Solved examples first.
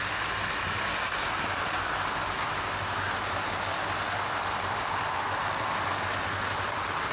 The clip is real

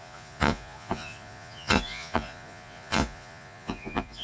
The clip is fake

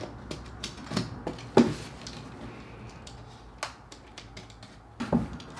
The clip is real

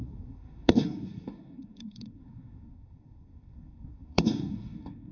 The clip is fake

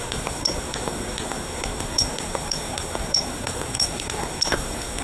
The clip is fake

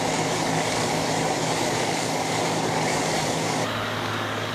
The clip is fake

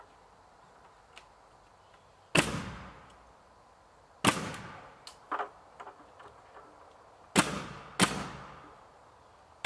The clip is real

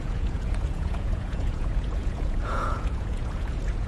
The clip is fake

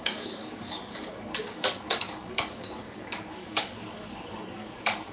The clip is fake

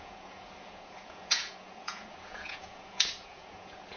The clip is fake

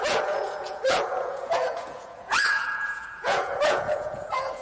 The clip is fake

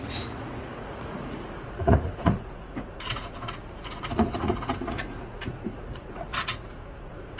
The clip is fake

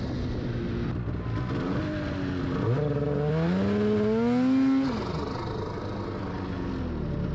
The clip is real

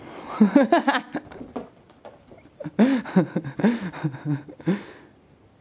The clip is real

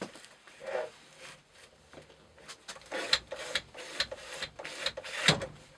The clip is real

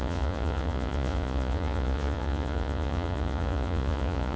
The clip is fake